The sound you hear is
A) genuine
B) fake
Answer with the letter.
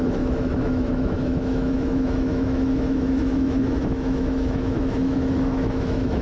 B